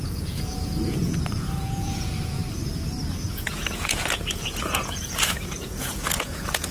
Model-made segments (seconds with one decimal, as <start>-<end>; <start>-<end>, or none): 0.0-2.4; 3.3-6.7